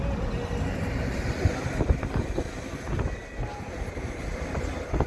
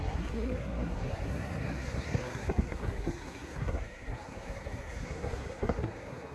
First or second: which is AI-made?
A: second